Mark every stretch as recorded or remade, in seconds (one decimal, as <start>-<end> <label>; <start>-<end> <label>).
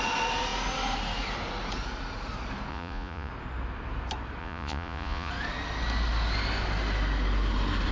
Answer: 0.0-2.7 recorded; 2.7-3.3 remade; 3.3-4.4 recorded; 4.4-5.3 remade; 5.3-7.9 recorded